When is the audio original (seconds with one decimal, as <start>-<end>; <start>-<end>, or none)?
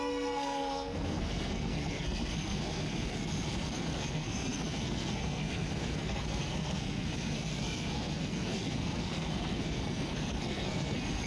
none